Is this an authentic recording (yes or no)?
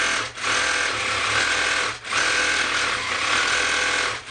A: yes